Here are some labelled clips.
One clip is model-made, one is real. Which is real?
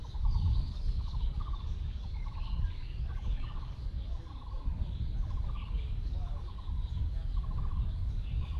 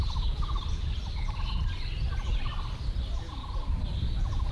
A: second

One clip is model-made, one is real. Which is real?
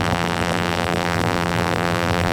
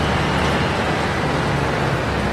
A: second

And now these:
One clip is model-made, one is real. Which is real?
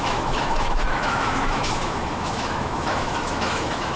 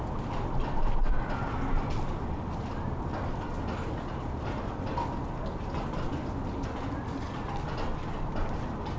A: second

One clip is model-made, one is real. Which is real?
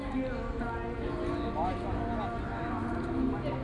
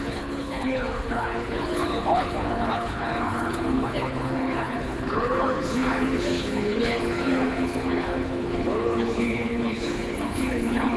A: first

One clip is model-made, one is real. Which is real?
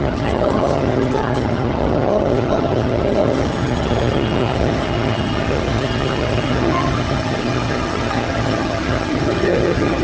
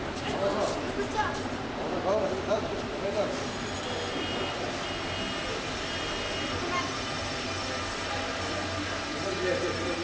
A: second